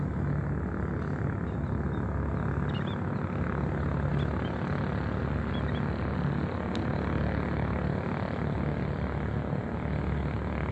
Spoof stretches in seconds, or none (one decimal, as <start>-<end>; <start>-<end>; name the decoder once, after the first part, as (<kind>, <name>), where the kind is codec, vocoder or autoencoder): none